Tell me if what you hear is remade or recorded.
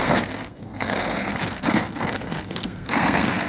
remade